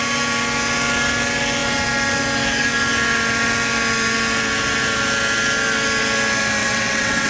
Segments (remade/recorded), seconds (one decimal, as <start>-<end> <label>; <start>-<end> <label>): 0.0-6.6 recorded; 6.6-7.3 remade